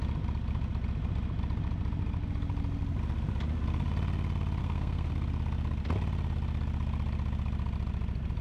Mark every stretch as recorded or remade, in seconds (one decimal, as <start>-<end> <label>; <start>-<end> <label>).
0.0-4.6 recorded; 4.6-5.1 remade; 5.1-8.4 recorded